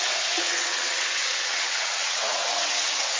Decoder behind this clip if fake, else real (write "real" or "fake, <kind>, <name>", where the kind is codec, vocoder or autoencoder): fake, vocoder, WaveNeXt